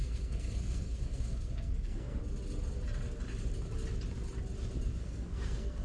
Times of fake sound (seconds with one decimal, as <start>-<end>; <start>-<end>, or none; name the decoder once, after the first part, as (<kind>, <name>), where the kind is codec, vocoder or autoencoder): 0.0-2.2 (codec, SNAC); 5.0-5.8